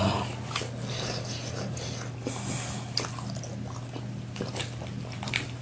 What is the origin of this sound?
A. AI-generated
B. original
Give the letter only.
B